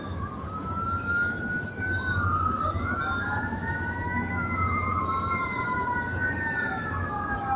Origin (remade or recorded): remade